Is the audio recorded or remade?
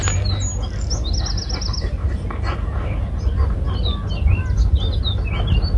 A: recorded